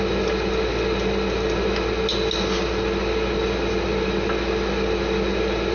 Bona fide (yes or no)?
yes